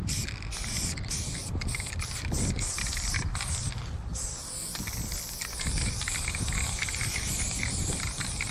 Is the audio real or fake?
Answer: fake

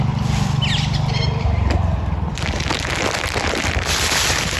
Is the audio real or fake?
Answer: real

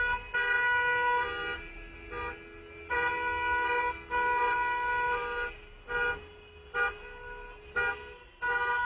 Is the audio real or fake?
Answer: real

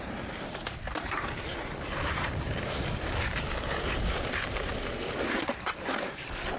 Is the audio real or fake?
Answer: fake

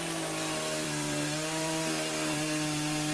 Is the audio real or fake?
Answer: fake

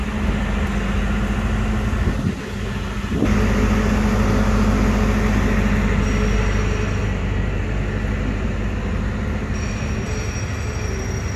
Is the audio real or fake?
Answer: real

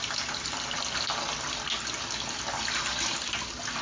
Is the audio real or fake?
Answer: real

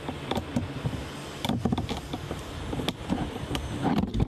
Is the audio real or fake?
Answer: real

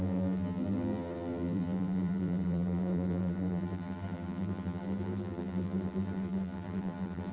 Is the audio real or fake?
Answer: fake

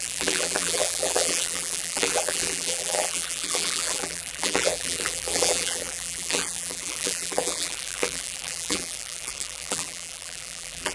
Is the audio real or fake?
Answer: fake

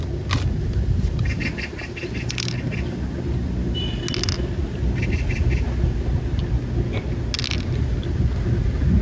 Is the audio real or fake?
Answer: real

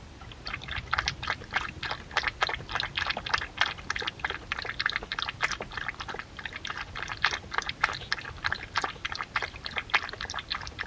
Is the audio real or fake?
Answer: real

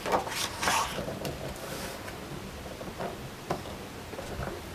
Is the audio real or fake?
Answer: fake